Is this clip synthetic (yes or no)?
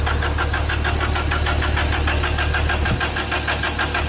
no